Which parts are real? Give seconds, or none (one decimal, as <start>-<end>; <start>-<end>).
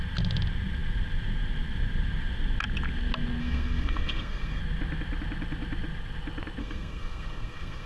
0.0-3.4; 4.6-6.6